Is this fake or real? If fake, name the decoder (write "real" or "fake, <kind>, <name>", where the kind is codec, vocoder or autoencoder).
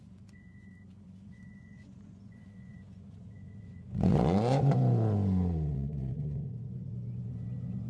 fake, vocoder, Vocos